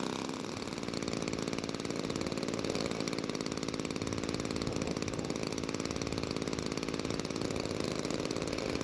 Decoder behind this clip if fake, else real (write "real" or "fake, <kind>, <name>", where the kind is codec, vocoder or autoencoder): real